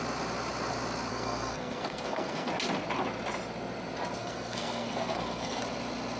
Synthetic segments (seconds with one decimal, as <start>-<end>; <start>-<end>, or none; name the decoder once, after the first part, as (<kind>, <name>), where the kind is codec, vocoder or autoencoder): 1.1-2.5 (codec, SNAC); 4.2-5.6